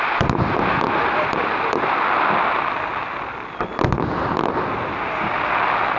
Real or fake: real